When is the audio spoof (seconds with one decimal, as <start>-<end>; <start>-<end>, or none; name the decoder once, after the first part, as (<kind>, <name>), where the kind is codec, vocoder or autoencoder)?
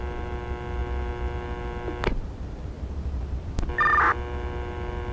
none